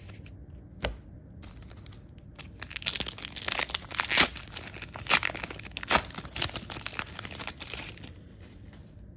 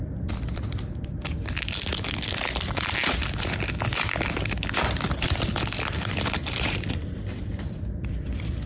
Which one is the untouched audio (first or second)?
first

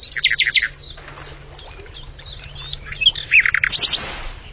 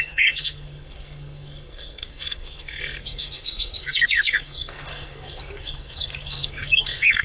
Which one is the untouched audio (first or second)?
first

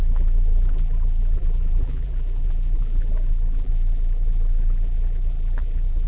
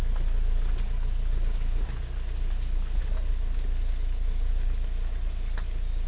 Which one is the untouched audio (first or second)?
second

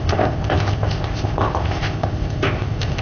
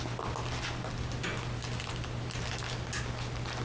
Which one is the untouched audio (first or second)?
second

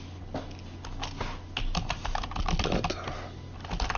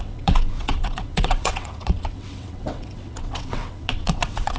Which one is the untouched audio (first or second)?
first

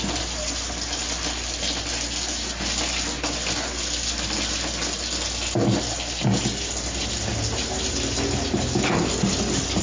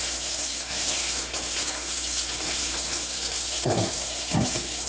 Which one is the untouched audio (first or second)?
first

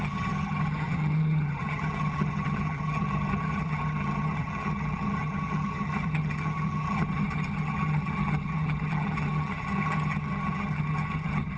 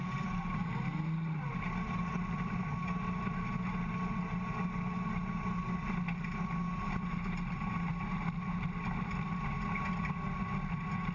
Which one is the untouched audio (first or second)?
second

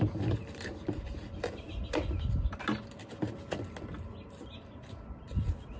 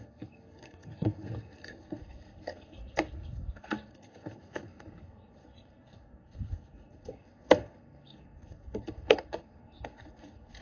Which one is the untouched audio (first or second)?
first